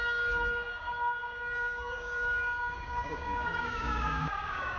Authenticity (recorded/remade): remade